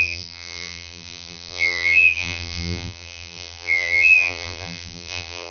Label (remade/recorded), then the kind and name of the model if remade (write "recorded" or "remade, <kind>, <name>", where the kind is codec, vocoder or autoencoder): remade, vocoder, BigVGAN v2